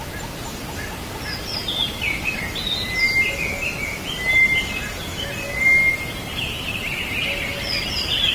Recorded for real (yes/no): yes